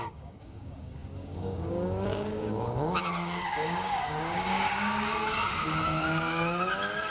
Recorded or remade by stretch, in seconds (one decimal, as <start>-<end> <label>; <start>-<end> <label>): 0.0-7.1 remade